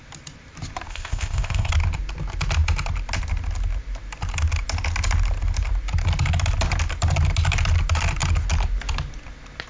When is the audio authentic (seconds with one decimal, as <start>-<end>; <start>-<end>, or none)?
0.0-0.9; 1.7-9.7